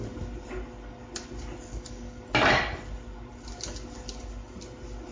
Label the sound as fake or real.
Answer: real